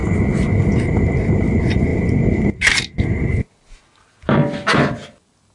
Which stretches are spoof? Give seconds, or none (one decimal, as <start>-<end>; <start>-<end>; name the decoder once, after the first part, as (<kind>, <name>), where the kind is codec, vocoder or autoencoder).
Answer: none